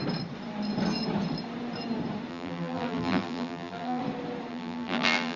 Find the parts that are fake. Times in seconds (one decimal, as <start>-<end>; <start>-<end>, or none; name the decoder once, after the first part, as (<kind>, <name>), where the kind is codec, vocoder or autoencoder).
2.3-4.0 (vocoder, BigVGAN v2); 4.5-5.4